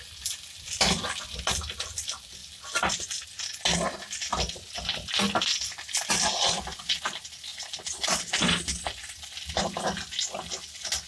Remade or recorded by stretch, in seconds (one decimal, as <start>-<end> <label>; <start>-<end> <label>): 0.0-7.5 recorded; 7.5-8.2 remade; 8.2-11.1 recorded